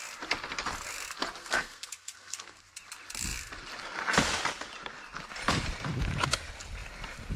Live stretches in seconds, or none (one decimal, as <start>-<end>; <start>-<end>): 0.0-1.4; 2.6-7.4